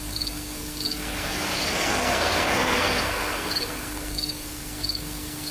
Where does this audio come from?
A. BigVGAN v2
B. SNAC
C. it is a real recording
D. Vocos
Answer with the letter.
B